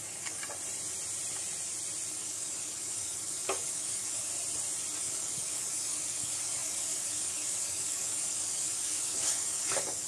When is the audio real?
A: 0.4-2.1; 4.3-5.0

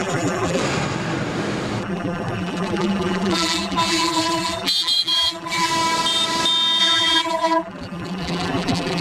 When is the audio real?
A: 0.6-1.8; 5.7-6.8

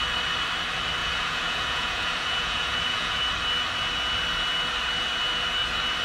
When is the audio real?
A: 0.0-1.0; 3.2-6.0

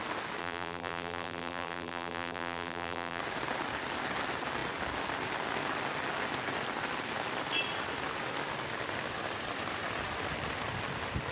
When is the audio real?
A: 0.0-0.4; 3.2-11.3

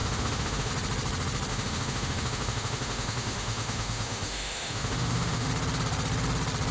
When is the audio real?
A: 0.7-1.5; 5.5-6.7